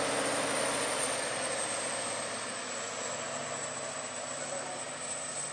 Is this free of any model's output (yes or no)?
yes